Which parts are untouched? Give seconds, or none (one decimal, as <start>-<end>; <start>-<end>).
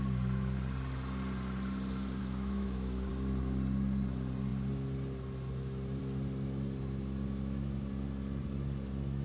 0.0-2.2; 3.1-9.2